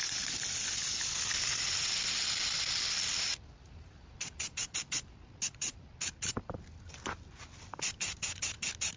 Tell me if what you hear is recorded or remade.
recorded